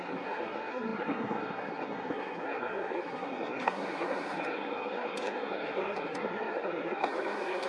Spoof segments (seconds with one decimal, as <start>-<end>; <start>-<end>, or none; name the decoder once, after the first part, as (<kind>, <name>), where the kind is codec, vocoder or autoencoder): 0.0-7.7 (codec, SNAC)